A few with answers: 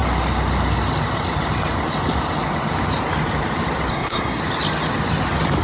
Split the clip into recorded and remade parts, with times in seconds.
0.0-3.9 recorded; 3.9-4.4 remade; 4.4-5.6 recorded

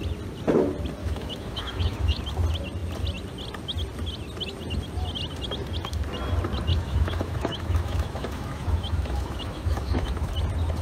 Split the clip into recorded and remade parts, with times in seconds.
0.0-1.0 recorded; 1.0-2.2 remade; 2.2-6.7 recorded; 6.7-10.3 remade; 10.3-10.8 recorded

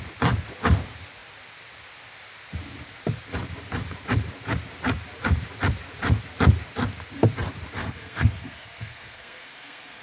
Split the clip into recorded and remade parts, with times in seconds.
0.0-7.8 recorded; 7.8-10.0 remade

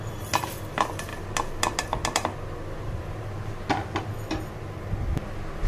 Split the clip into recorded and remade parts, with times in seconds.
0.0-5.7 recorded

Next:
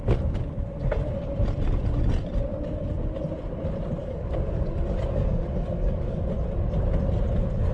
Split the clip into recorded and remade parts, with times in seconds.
0.0-4.0 recorded; 4.0-6.2 remade; 6.2-7.7 recorded